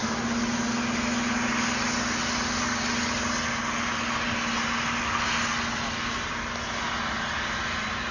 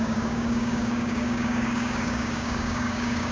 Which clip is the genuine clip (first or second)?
first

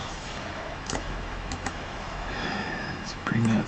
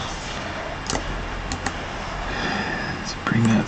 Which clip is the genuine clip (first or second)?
second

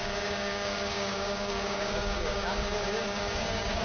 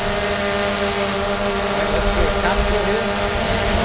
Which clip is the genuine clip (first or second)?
second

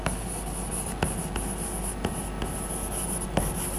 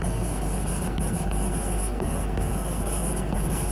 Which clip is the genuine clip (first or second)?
first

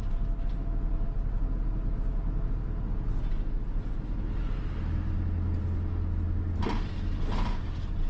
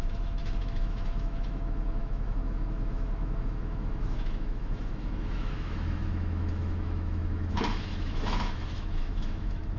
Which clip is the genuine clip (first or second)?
first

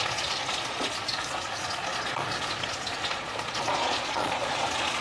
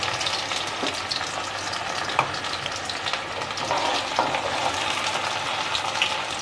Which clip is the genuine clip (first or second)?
second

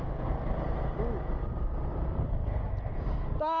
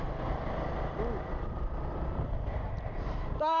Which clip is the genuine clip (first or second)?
first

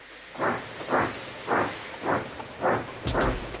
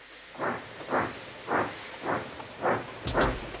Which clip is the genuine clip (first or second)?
first